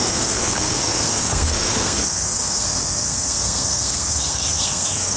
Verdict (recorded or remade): remade